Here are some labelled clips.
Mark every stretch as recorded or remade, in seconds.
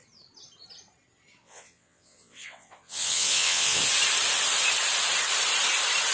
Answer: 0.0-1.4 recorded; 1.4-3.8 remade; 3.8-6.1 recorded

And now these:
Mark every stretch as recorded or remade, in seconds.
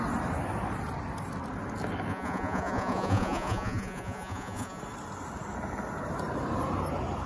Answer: 0.0-2.1 recorded; 2.1-4.8 remade; 4.8-7.3 recorded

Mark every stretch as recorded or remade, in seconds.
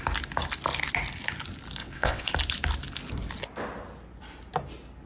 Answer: 0.0-1.8 recorded; 1.8-2.3 remade; 2.3-5.1 recorded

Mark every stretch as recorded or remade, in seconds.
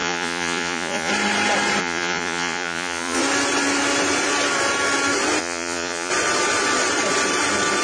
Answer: 0.0-1.1 remade; 1.1-1.8 recorded; 1.8-3.2 remade; 3.2-5.4 recorded; 5.4-6.1 remade; 6.1-7.8 recorded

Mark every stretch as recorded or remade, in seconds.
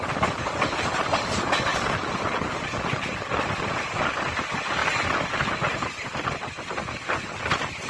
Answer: 0.0-7.9 recorded